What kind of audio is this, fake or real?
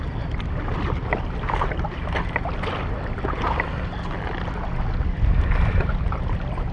real